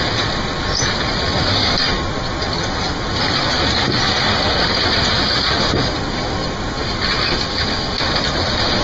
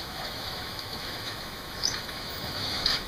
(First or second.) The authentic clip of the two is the first